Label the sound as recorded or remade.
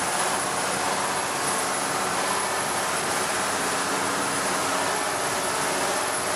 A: recorded